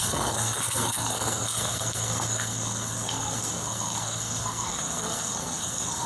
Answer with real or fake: fake